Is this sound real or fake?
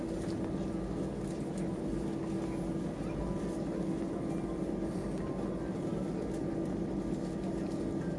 real